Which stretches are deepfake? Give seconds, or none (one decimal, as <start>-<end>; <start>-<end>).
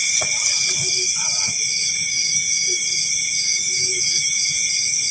2.0-2.8; 3.4-4.4